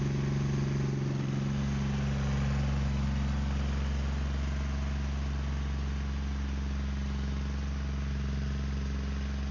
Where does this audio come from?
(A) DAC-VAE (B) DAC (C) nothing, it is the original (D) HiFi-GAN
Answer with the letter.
C